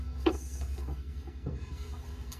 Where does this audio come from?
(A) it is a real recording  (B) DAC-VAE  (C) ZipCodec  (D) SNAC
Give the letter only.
D